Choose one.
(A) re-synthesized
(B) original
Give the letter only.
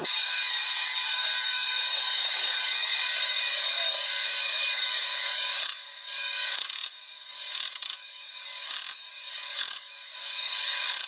A